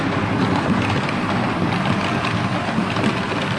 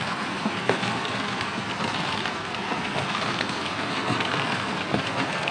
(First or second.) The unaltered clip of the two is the first